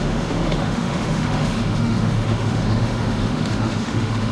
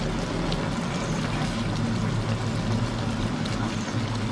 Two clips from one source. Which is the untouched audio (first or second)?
second